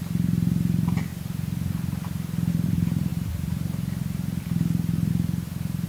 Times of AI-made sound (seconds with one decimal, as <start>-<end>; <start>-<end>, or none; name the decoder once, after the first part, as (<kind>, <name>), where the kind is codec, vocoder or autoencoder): none